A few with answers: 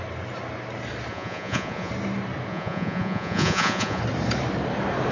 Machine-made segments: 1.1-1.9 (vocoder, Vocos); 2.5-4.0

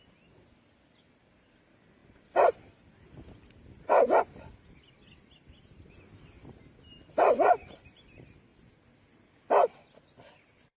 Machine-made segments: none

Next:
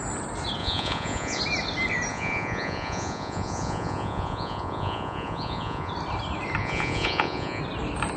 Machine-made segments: 0.6-1.4 (vocoder, Vocos); 2.1-5.9; 6.6-7.6

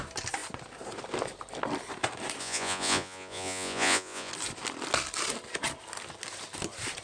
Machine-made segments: 2.4-4.3 (vocoder, Vocos)